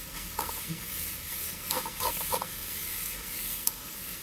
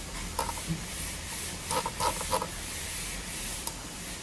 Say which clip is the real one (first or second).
second